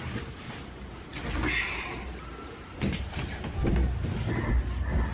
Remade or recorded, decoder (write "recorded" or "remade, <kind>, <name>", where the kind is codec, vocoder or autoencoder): recorded